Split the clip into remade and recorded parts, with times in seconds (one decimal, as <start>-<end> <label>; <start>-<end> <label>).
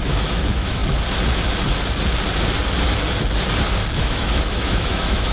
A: 0.0-0.8 remade; 0.8-4.0 recorded; 4.0-5.3 remade